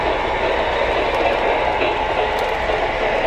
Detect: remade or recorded recorded